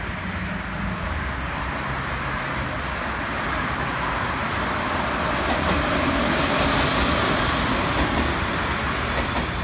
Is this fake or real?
real